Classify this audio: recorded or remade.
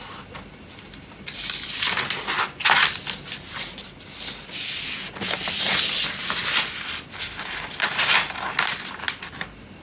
recorded